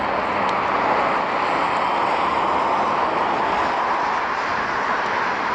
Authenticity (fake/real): real